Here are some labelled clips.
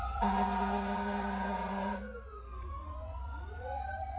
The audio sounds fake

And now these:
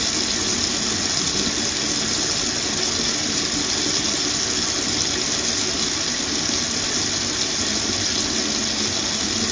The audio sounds real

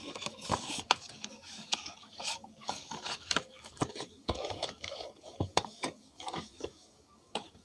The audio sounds fake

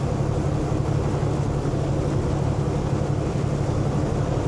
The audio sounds real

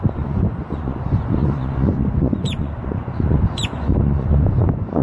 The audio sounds fake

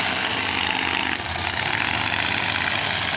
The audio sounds real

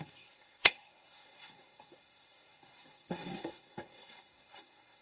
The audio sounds fake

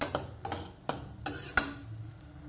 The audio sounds real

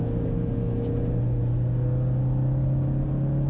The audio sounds real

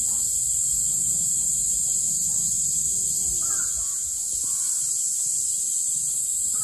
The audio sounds real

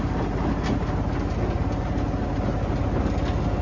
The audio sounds real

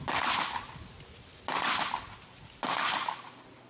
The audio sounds real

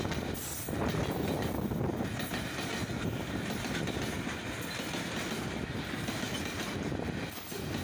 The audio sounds real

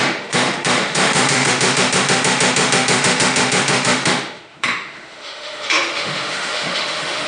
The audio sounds fake